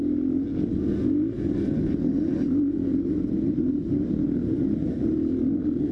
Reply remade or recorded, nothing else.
recorded